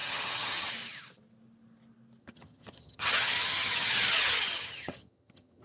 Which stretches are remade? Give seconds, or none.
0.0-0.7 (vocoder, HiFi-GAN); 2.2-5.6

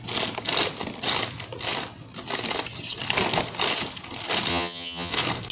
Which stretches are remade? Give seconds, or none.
4.5-5.1 (vocoder, HiFi-GAN)

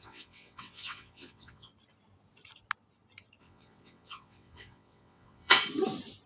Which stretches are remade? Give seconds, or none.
0.0-1.7 (vocoder, WaveNeXt); 3.4-5.6

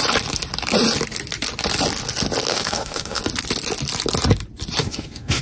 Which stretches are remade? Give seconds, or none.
2.5-3.2 (autoencoder, DAC-VAE); 4.8-5.4